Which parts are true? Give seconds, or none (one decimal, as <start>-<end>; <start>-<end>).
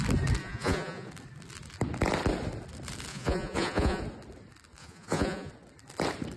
0.0-0.4; 1.1-3.1; 4.0-4.8; 5.5-6.4